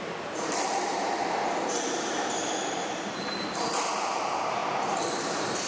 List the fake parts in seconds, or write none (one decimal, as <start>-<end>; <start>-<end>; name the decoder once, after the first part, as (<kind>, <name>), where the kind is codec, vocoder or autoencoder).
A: 0.0-4.6 (vocoder, BigVGAN v2); 5.2-5.7